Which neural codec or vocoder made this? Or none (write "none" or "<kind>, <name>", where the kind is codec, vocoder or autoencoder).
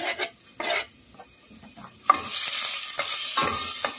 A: none